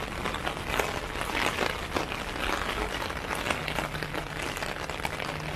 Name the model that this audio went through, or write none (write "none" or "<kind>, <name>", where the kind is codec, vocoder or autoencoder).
none